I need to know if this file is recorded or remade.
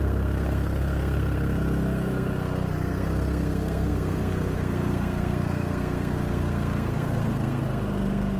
remade